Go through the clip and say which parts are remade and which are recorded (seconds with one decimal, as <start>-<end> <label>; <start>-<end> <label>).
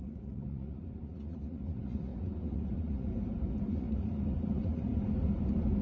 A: 0.0-3.1 remade; 3.1-3.7 recorded; 3.7-4.9 remade; 4.9-5.8 recorded